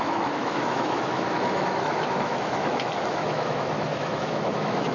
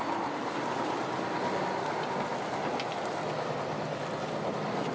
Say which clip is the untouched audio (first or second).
second